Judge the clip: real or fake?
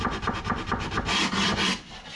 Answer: real